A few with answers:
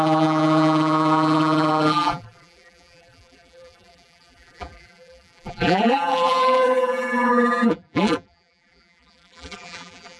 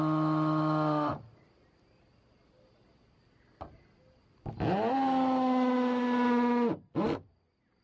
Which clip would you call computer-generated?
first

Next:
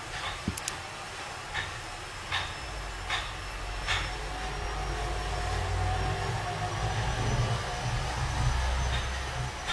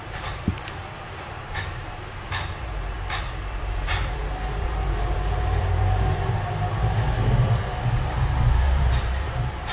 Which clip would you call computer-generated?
second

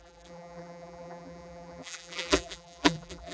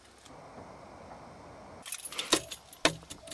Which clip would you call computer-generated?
first